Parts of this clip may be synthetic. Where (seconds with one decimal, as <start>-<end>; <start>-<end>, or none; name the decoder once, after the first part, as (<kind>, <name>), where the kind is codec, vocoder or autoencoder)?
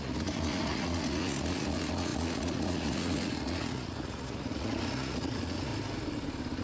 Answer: 0.0-5.7 (vocoder, Vocos)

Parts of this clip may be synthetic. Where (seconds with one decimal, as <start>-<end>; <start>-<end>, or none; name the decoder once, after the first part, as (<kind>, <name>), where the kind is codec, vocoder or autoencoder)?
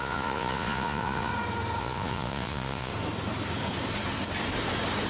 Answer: 0.0-1.3 (vocoder, Vocos); 1.8-2.9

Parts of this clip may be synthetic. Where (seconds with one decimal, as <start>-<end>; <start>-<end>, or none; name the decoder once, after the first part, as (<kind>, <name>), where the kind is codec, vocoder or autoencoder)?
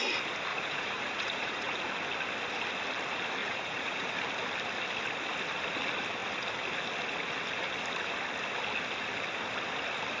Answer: 0.5-1.9 (vocoder, Vocos); 3.4-4.1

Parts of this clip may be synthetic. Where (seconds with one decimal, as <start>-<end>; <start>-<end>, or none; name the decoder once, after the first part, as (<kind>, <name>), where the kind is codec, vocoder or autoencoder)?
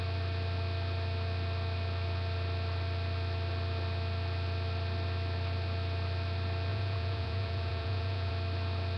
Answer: 6.7-8.3 (vocoder, Vocos)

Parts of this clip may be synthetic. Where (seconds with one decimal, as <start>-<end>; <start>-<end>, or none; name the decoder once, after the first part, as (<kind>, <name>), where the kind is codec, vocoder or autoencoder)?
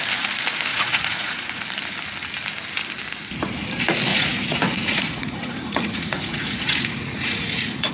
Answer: 0.7-1.6 (vocoder, Vocos); 4.1-7.9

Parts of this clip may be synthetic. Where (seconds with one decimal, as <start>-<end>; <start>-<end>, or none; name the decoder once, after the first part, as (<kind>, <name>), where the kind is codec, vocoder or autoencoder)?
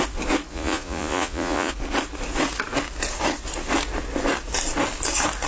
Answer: 0.5-1.7 (vocoder, Vocos)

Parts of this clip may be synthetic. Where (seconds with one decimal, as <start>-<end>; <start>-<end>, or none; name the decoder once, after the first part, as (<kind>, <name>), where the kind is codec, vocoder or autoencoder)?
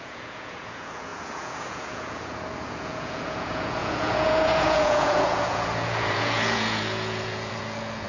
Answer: 0.0-8.1 (vocoder, Vocos)